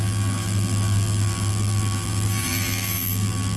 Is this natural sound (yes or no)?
no